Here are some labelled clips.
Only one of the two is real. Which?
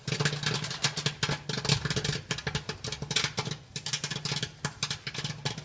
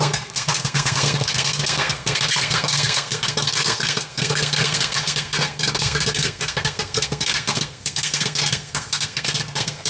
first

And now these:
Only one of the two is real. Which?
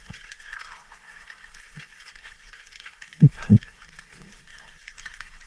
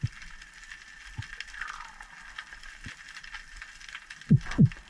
second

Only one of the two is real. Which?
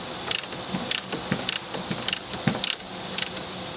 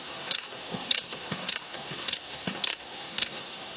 first